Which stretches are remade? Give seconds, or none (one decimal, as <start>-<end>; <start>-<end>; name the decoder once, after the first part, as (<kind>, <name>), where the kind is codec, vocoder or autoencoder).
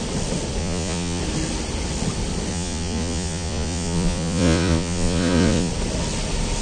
0.6-1.2 (vocoder, Vocos); 2.5-5.7